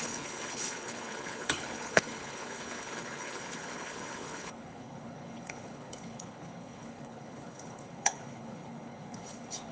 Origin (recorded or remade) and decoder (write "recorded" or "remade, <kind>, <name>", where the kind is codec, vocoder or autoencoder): remade, codec, HILCodec